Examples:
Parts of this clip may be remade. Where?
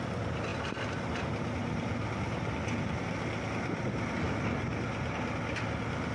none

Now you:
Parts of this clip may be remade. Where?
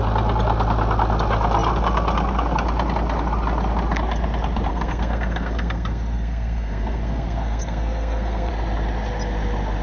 4.7-8.5 (codec, SNAC)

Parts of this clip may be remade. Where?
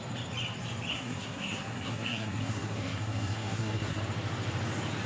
0.9-4.0 (codec, SNAC)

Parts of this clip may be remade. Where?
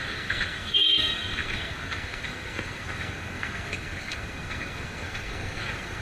0.0-6.0 (codec, SNAC)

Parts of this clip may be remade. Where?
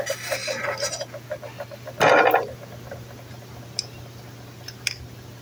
none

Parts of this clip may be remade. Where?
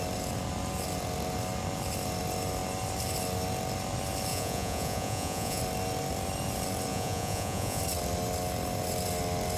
4.3-5.6 (vocoder, Vocos); 6.9-7.8